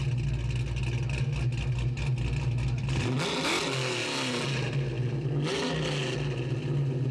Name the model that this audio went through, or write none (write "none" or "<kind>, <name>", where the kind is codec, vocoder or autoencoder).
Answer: none